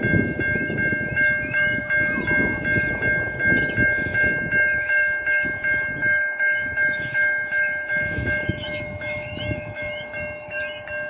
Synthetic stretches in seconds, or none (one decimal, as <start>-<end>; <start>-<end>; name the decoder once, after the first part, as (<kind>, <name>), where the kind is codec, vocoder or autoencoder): 6.0-10.6 (autoencoder, DAC-VAE)